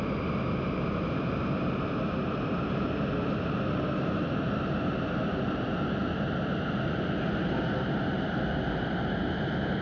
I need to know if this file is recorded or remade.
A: recorded